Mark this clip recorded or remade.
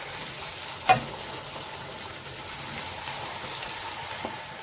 recorded